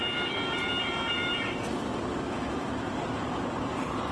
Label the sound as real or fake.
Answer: fake